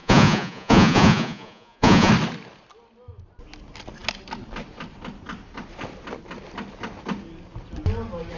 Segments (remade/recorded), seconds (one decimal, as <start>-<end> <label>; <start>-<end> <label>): 0.0-2.1 remade; 2.1-8.4 recorded